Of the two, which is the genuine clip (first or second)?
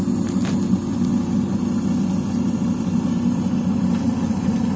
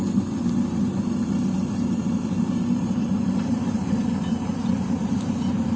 first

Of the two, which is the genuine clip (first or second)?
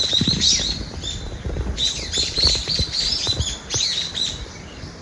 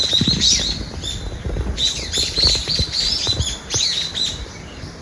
second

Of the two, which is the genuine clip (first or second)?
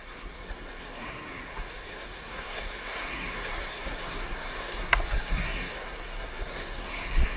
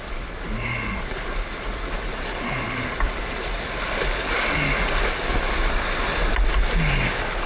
second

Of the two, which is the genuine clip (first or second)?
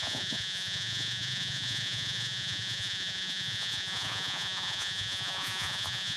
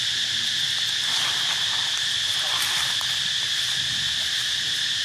second